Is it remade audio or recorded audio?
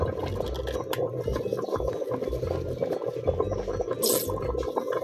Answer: recorded